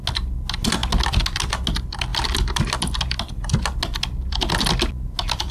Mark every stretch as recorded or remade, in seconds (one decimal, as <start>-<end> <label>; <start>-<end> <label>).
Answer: 0.0-5.5 recorded

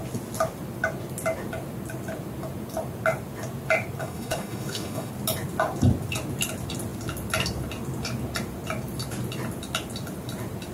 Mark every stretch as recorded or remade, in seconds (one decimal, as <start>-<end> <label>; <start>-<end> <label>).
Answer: 0.0-4.0 recorded; 4.0-5.1 remade; 5.1-10.7 recorded

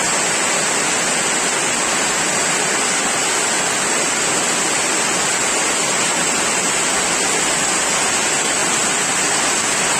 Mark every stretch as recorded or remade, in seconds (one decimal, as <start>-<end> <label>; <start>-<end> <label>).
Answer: 0.0-10.0 recorded